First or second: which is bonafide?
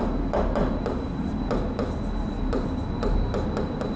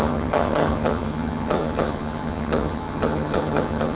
first